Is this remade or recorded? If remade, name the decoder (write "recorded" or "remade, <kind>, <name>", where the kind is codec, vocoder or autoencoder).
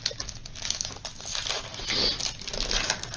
recorded